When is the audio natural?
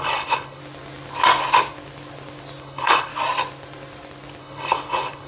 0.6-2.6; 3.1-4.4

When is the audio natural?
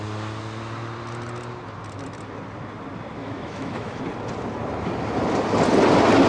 0.0-3.2; 4.0-6.3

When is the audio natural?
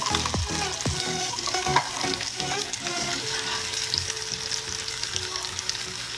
0.4-1.0; 4.2-4.9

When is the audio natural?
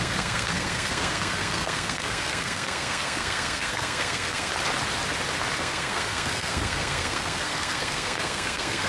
4.5-5.6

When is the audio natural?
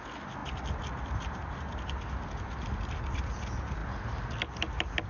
0.0-5.1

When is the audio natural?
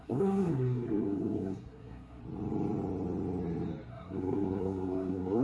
2.2-3.9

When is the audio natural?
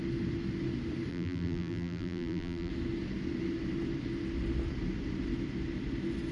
0.0-1.1; 2.7-6.3